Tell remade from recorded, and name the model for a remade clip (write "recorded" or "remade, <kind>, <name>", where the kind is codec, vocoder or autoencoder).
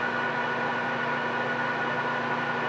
recorded